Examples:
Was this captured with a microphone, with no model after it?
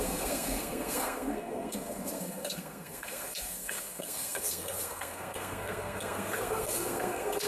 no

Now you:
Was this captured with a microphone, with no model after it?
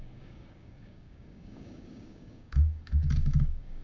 no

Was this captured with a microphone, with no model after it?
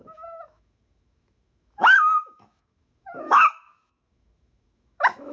no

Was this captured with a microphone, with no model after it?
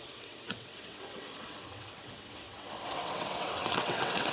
no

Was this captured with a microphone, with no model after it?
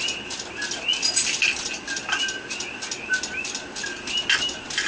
yes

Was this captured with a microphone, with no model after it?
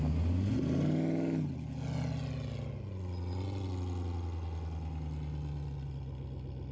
yes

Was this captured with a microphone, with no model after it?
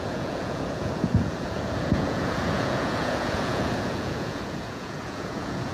no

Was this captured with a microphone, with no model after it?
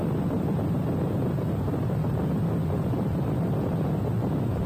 yes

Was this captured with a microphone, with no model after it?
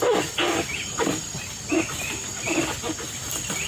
yes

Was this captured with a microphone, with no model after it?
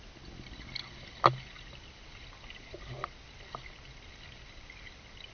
yes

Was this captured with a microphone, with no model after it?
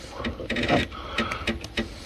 yes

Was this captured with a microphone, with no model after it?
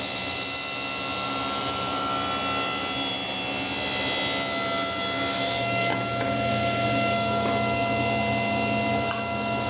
yes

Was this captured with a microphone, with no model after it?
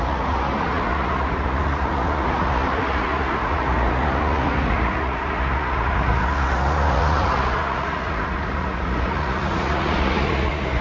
no